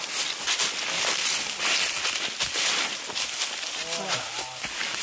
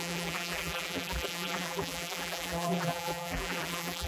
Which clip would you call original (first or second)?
first